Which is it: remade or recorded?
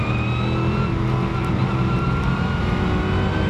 recorded